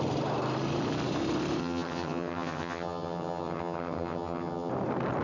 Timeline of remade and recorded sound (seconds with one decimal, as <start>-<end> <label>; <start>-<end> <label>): 0.0-1.6 recorded; 1.6-4.7 remade; 4.7-5.2 recorded